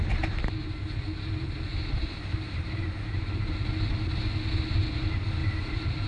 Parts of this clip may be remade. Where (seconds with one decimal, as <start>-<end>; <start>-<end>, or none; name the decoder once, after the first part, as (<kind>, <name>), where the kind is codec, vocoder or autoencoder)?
1.7-3.7 (vocoder, BigVGAN v2); 5.4-6.1